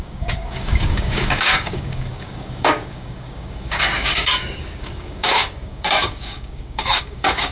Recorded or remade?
remade